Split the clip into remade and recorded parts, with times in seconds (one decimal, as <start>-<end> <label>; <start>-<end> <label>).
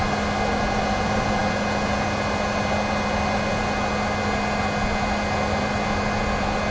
0.0-6.7 recorded